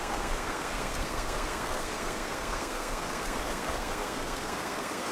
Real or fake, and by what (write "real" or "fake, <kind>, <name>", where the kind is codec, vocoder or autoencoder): fake, codec, SNAC